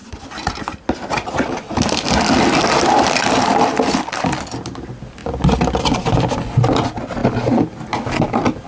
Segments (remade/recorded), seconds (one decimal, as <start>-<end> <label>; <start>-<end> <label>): 0.0-8.7 recorded